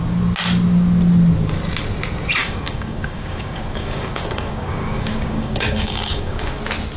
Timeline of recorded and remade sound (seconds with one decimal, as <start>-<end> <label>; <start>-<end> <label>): 0.0-2.4 recorded; 2.4-6.6 remade; 6.6-7.0 recorded